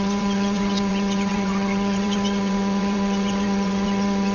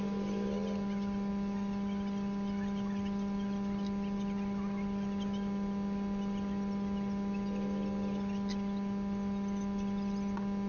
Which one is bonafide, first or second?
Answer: second